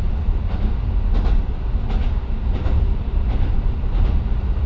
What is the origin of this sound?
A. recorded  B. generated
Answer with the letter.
A